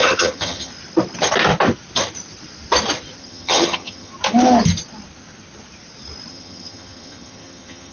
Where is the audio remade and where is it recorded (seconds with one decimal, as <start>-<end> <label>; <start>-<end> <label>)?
0.0-0.7 remade; 0.7-3.2 recorded; 3.2-4.1 remade; 4.1-6.3 recorded; 6.3-7.9 remade